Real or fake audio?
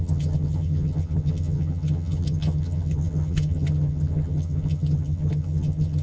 fake